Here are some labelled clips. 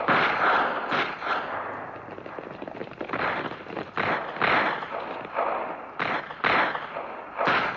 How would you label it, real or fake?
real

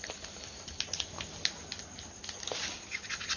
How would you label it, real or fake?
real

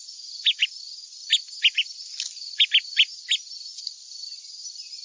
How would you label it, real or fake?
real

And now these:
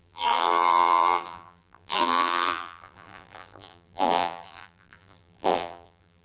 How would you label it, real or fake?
fake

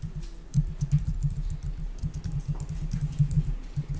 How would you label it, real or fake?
real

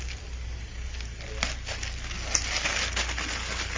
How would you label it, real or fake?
real